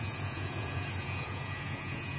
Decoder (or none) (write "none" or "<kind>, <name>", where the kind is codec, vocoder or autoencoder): vocoder, Vocos